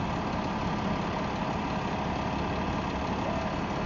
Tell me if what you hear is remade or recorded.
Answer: recorded